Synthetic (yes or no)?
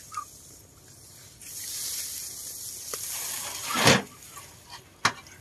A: no